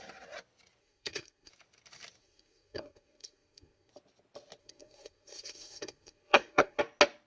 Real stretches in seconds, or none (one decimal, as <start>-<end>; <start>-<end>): 0.0-0.8; 1.5-2.2; 3.9-4.6; 6.8-7.3